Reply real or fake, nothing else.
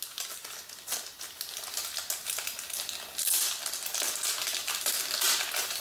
real